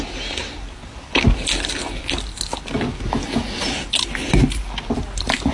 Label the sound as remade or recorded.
recorded